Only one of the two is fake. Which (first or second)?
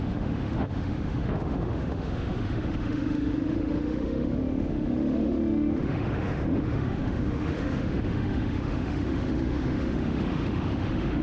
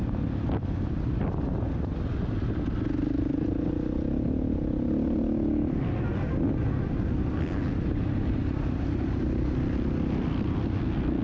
first